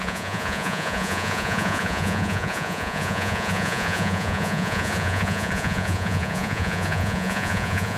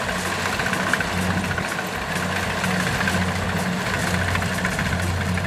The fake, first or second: first